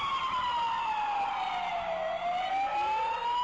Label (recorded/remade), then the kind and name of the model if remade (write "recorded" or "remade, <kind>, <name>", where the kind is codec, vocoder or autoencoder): recorded